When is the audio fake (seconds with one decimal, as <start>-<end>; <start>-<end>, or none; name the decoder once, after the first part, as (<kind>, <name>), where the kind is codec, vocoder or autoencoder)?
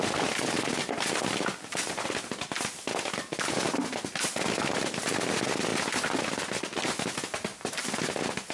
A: none